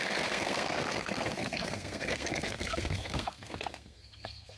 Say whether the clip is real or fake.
fake